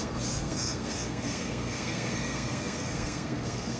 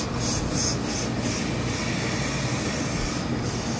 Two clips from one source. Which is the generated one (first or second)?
first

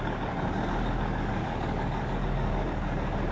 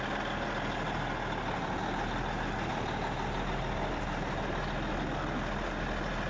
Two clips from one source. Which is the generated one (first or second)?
first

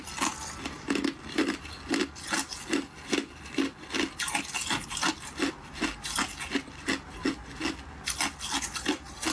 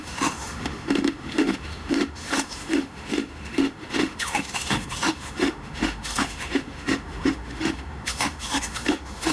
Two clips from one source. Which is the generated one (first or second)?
second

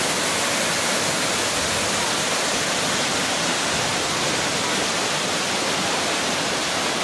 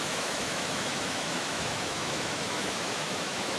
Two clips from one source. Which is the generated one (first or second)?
second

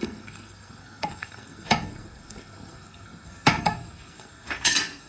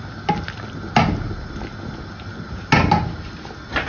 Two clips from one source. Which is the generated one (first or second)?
first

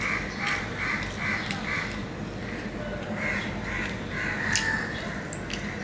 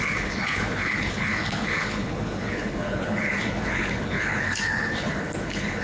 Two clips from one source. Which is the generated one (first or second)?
second